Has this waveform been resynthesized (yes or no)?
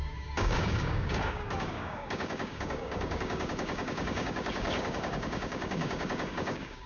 yes